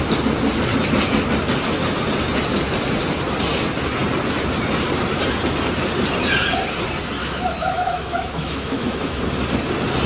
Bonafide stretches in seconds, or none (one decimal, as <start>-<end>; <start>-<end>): 0.0-7.2; 9.2-10.1